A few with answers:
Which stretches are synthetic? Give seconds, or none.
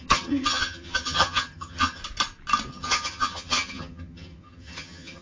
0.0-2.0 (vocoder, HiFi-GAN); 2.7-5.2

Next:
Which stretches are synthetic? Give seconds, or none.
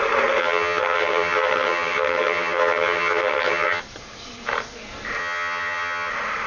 0.4-3.8 (vocoder, HiFi-GAN); 5.2-6.1